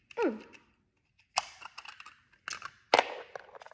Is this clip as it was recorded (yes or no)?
yes